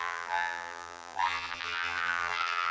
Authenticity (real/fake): fake